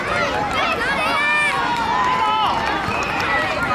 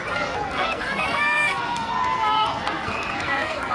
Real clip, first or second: first